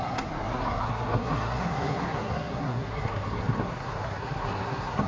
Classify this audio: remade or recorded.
remade